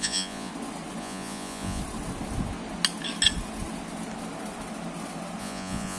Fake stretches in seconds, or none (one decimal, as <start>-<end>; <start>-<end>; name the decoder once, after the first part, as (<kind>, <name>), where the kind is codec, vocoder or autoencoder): 0.0-0.5 (vocoder, Vocos); 1.0-1.8; 5.4-6.0